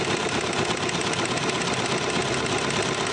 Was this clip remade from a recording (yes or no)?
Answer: no